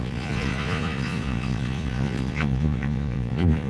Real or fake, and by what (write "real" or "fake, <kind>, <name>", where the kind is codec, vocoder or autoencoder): fake, vocoder, Vocos